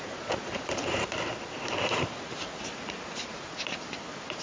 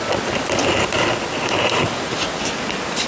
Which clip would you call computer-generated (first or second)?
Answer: first